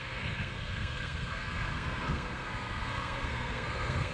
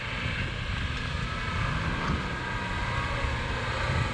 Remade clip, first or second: first